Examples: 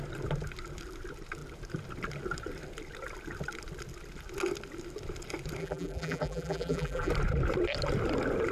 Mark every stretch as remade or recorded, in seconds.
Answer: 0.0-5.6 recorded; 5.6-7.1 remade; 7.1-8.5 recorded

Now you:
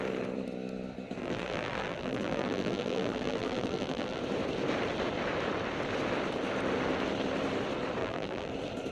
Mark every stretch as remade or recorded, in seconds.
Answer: 0.0-1.2 recorded; 1.2-4.2 remade; 4.2-8.0 recorded; 8.0-8.5 remade; 8.5-8.9 recorded

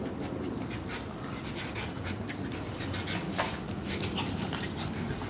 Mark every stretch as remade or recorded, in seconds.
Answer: 0.0-1.9 recorded; 1.9-5.3 remade